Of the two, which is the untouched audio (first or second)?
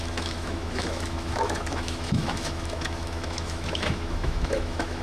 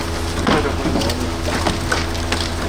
second